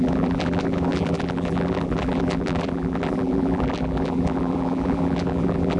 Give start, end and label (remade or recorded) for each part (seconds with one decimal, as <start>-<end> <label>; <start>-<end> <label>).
0.0-5.8 remade